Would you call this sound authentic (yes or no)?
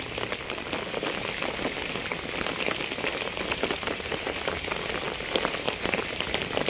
yes